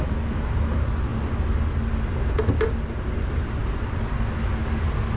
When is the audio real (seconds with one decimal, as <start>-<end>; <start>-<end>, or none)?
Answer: 0.0-5.2